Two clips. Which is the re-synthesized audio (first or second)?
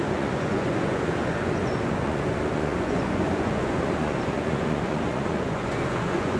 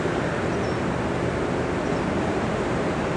first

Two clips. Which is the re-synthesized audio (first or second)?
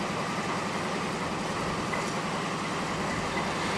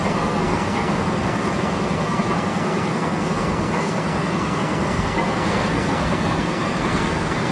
second